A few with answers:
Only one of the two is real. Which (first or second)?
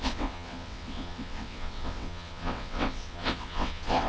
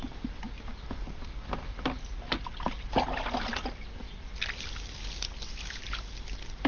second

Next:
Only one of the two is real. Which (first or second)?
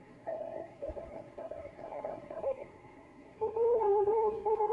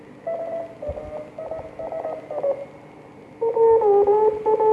second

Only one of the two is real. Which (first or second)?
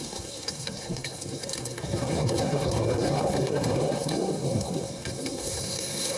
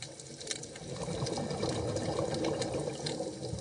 second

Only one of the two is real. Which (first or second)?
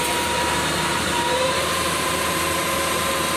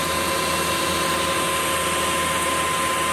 second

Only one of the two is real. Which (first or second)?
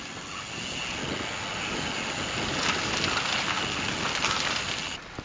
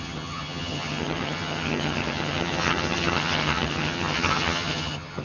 first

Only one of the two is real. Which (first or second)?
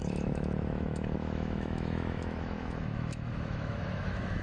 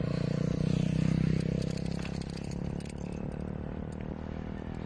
second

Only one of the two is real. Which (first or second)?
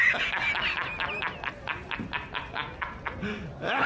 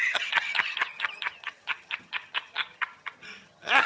first